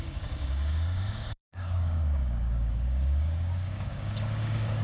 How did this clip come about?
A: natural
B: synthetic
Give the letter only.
B